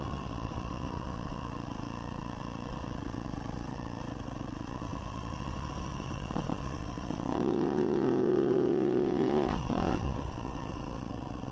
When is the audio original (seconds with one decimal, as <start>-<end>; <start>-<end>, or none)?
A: none